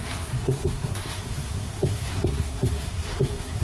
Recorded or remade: remade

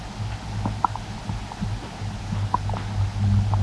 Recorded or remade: recorded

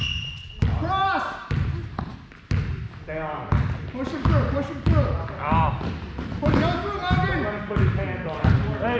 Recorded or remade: recorded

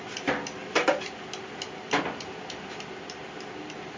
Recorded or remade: recorded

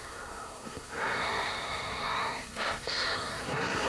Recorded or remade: remade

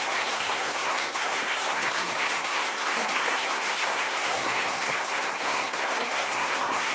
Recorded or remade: remade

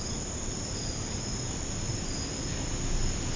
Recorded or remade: recorded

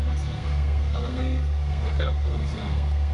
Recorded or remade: remade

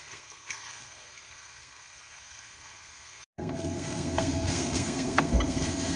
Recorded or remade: remade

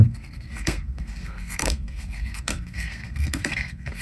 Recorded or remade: remade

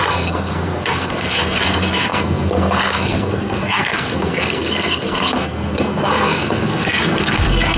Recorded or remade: remade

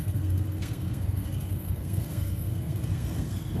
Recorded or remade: remade